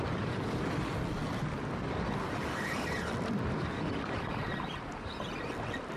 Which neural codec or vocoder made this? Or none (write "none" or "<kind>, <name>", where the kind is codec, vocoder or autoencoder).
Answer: none